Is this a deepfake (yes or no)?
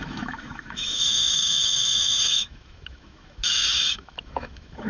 yes